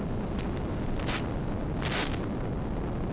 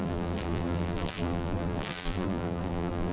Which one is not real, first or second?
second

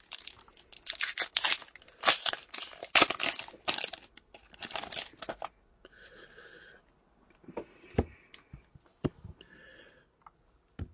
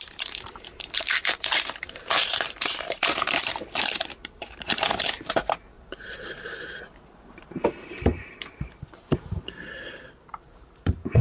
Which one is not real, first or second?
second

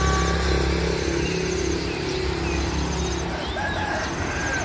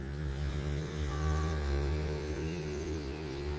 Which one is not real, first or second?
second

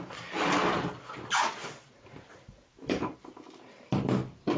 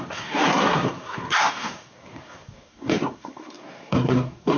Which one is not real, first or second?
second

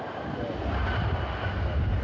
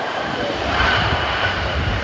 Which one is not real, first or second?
second